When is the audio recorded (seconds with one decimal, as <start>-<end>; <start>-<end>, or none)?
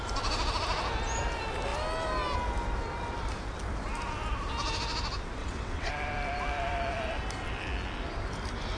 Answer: 0.0-5.4; 5.9-8.8